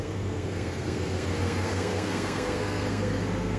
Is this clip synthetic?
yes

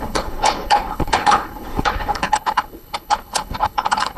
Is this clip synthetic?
yes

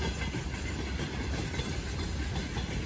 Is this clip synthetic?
no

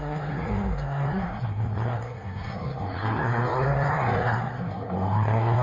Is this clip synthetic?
yes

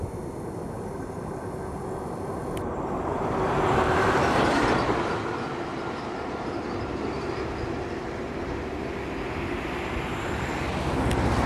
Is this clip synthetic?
no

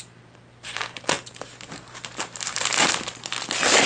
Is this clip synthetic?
no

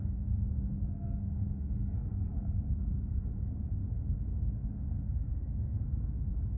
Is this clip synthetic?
yes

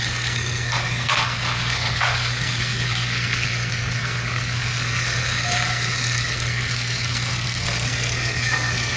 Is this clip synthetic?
yes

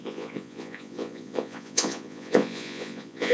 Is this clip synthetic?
yes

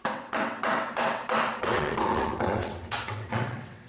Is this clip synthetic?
yes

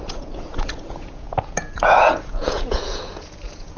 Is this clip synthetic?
yes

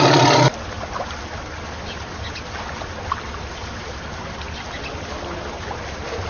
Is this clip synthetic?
no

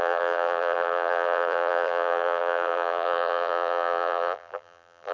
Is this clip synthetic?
yes